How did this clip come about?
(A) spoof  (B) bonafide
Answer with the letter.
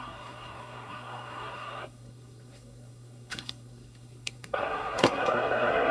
A